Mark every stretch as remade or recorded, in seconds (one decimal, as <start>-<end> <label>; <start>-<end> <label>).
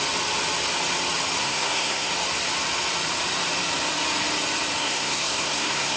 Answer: 0.0-1.4 recorded; 1.4-2.1 remade; 2.1-4.8 recorded; 4.8-6.0 remade